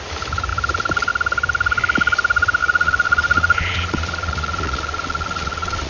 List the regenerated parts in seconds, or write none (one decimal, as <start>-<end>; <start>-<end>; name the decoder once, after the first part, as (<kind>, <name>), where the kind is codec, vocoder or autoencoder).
2.6-5.9 (vocoder, Vocos)